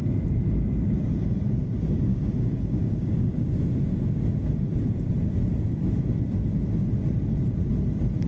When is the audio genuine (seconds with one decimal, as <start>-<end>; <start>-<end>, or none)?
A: 0.0-2.1; 3.6-8.3

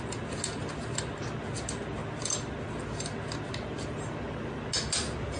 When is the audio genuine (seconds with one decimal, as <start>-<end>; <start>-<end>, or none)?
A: 0.0-2.0; 2.6-5.4

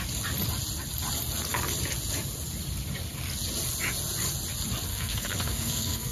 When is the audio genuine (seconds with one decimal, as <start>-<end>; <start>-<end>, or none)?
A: 0.0-4.9

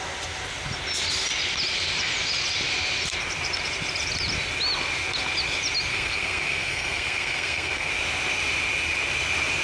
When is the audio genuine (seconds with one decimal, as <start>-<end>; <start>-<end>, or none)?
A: 0.0-5.9; 7.9-9.6

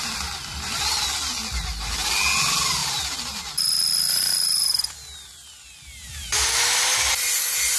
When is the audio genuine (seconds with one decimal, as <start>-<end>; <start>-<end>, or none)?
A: 0.0-7.8

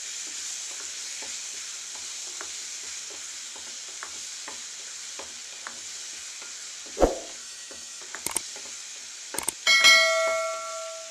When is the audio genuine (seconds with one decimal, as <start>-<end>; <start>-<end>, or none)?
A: 0.0-7.4; 8.0-11.1

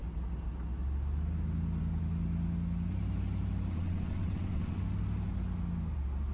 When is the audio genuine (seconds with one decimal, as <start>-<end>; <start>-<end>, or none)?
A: 0.0-3.7; 4.8-6.3

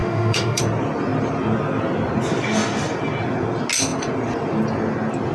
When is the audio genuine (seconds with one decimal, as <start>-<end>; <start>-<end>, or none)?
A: 0.6-5.3